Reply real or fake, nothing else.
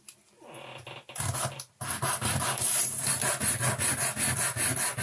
real